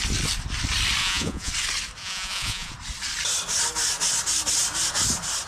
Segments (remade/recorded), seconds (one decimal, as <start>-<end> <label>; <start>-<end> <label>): 0.0-1.0 recorded; 1.0-1.5 remade; 1.5-2.0 recorded; 2.0-2.7 remade; 2.7-5.5 recorded